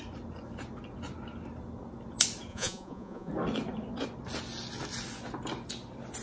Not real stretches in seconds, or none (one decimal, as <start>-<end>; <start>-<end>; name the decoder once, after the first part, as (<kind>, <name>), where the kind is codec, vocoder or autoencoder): 2.5-3.3 (vocoder, Vocos)